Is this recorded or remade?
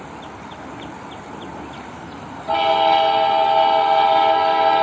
recorded